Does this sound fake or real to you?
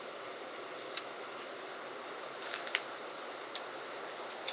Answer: real